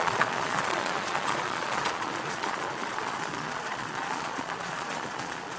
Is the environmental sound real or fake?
fake